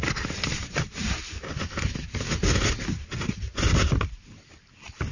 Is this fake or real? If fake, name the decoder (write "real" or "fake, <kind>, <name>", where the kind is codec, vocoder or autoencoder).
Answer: real